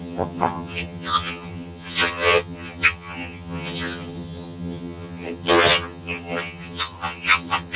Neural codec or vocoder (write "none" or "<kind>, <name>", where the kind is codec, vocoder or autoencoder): vocoder, HiFi-GAN